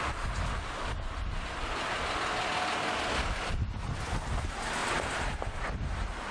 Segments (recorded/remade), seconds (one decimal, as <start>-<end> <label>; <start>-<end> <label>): 0.0-4.8 recorded; 4.8-5.6 remade; 5.6-6.3 recorded

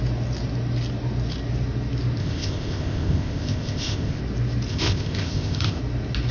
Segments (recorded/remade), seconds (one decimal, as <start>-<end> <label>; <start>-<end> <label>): 0.0-2.2 recorded; 2.2-4.2 remade; 4.2-4.7 recorded; 4.7-5.8 remade; 5.8-6.3 recorded

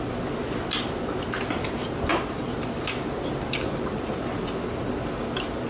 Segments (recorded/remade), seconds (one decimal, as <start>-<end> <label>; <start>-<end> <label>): 0.0-5.7 recorded

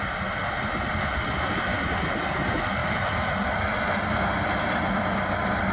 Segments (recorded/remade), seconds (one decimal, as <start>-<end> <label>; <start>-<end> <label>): 0.0-5.7 recorded

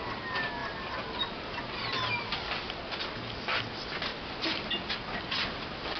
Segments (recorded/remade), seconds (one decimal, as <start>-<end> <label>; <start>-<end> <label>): 0.0-6.0 recorded